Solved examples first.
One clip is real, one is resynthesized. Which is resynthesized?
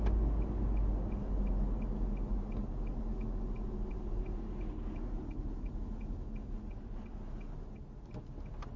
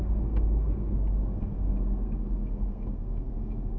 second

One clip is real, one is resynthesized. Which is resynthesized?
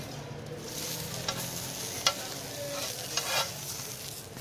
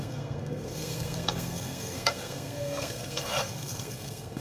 second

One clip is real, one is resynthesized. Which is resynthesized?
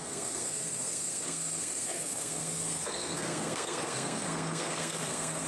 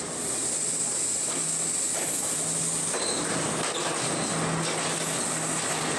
first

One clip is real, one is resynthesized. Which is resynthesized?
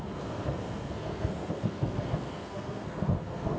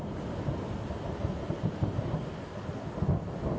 first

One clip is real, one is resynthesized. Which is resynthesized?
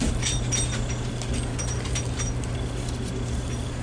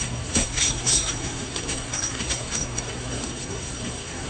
second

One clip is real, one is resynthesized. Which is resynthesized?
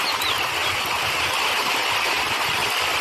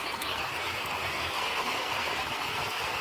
second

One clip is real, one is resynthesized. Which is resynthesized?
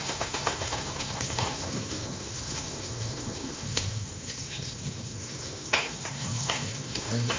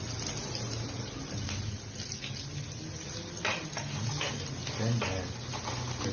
first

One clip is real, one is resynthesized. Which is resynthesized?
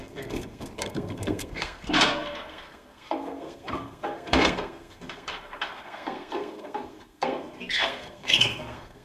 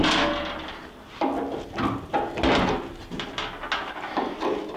first